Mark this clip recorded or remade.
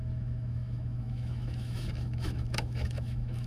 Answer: remade